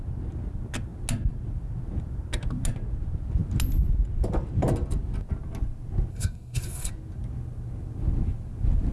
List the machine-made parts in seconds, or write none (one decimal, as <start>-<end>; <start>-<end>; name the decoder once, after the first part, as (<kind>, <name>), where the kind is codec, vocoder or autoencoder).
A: 6.1-6.9 (codec, SNAC)